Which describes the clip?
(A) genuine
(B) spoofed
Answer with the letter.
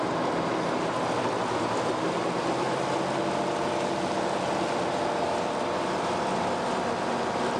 A